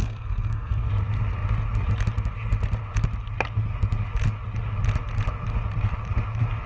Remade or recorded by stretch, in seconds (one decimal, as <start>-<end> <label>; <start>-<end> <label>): 0.0-0.9 remade; 0.9-6.7 recorded

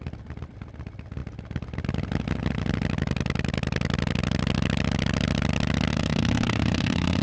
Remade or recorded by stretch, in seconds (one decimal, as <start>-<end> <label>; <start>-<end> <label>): 0.0-5.9 recorded; 5.9-7.2 remade

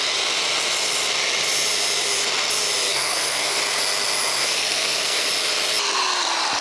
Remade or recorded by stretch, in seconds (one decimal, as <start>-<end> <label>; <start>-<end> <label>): 0.0-2.9 recorded; 2.9-3.6 remade; 3.6-4.4 recorded; 4.4-5.3 remade; 5.3-6.6 recorded

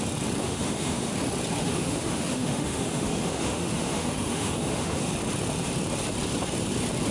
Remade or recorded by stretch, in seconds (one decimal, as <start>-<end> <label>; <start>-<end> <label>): 0.0-0.4 recorded; 0.4-1.1 remade; 1.1-1.6 recorded; 1.6-5.1 remade; 5.1-7.1 recorded

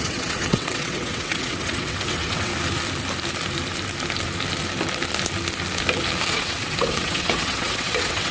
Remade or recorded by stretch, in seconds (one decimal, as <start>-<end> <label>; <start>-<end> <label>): 0.0-2.5 remade; 2.5-6.3 recorded; 6.3-8.3 remade

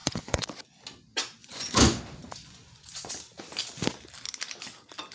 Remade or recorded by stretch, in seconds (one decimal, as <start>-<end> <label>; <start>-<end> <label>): 0.0-0.5 remade; 0.5-1.4 recorded; 1.4-2.0 remade; 2.0-2.4 recorded; 2.4-3.1 remade; 3.1-5.1 recorded

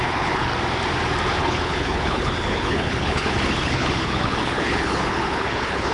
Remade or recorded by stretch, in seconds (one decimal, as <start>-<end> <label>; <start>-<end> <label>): 0.0-0.5 remade; 0.5-1.4 recorded; 1.4-5.9 remade